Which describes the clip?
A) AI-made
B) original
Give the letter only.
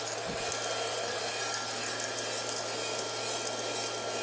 B